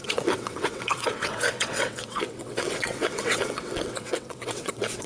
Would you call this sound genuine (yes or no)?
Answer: no